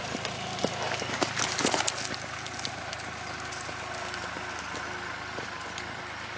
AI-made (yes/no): no